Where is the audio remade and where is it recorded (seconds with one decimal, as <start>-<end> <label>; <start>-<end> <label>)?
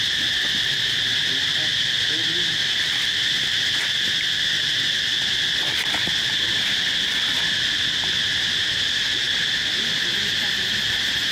0.0-2.6 recorded; 2.6-3.5 remade; 3.5-11.3 recorded